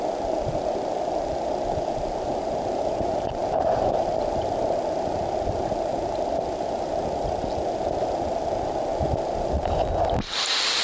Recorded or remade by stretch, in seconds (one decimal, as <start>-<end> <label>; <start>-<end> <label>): 0.0-10.8 recorded